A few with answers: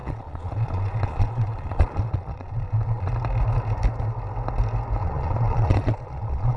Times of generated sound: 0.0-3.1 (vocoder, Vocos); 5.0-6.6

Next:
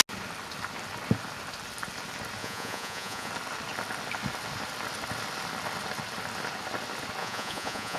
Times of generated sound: 2.4-3.3 (vocoder, Vocos); 7.2-8.0

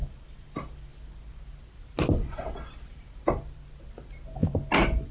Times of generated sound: none

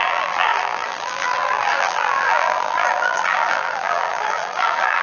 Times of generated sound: 0.0-5.0 (vocoder, BigVGAN v2)

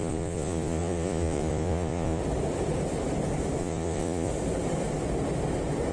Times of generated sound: 0.0-2.2 (vocoder, Vocos); 3.6-4.3

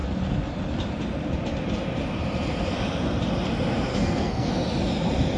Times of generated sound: 3.9-4.5 (codec, SNAC)

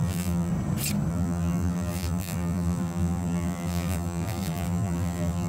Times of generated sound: 0.0-0.5 (vocoder, BigVGAN v2); 1.1-5.5

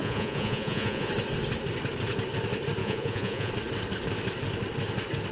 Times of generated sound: 0.0-1.1 (vocoder, Vocos); 2.8-3.5